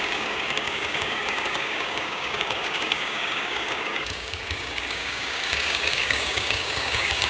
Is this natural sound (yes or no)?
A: no